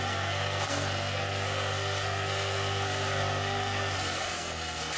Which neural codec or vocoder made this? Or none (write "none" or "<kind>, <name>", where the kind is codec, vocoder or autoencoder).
codec, SNAC